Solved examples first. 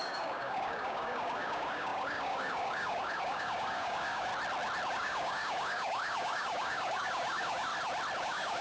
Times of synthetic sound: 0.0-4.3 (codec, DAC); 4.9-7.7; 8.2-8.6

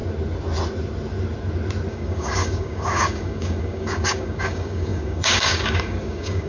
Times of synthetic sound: 1.9-6.5 (codec, DAC)

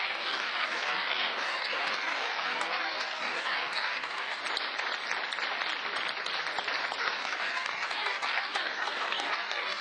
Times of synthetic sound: 0.0-4.4 (codec, DAC); 7.0-9.8

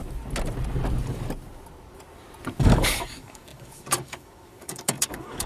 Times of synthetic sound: 2.6-5.5 (codec, DAC)

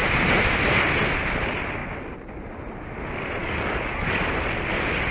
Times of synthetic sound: 3.4-4.2 (codec, DAC)